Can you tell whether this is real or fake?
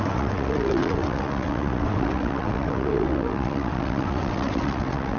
fake